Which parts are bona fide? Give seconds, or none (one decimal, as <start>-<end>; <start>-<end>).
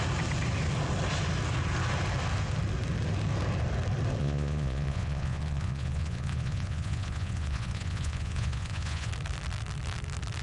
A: 0.0-4.2; 9.1-10.4